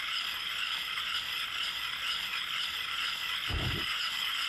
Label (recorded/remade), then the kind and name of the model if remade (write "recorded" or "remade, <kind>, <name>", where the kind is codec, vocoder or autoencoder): recorded